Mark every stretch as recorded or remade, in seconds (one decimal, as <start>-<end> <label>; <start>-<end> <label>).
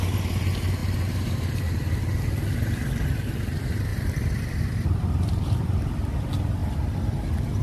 0.0-0.8 recorded; 0.8-1.7 remade; 1.7-3.9 recorded; 3.9-5.4 remade; 5.4-7.6 recorded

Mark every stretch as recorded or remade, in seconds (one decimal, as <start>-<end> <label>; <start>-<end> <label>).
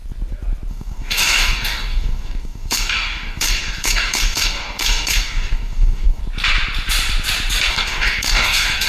0.0-0.7 recorded; 0.7-6.2 remade; 6.2-7.7 recorded; 7.7-8.9 remade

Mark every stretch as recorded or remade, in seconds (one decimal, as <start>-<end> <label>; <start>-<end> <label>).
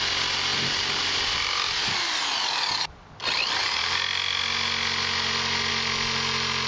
0.0-6.7 recorded